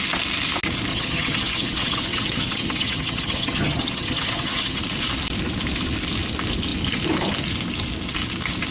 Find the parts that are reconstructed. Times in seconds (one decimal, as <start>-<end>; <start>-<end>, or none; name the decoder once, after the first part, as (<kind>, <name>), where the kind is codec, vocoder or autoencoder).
0.9-4.8 (vocoder, HiFi-GAN)